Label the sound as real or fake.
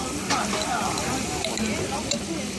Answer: real